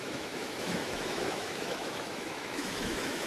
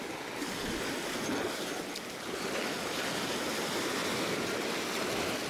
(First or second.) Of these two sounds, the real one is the second